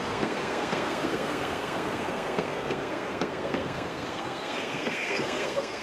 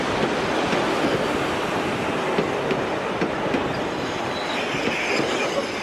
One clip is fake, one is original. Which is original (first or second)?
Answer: second